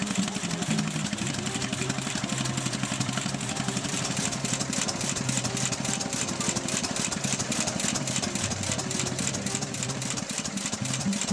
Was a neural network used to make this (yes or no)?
yes